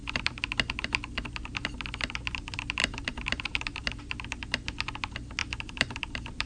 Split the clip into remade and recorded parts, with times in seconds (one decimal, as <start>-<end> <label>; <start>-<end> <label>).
0.0-0.5 remade; 0.5-2.8 recorded; 2.8-4.0 remade; 4.0-5.4 recorded; 5.4-6.5 remade